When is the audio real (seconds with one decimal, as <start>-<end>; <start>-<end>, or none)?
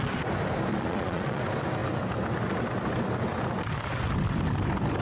0.0-0.7; 1.4-5.0